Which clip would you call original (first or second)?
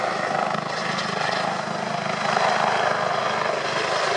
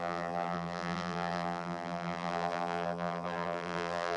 first